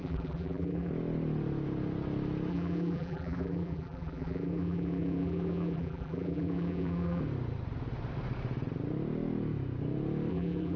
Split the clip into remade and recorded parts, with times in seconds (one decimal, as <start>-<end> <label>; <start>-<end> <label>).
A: 0.0-0.9 remade; 0.9-2.5 recorded; 2.5-7.2 remade; 7.2-10.3 recorded; 10.3-10.8 remade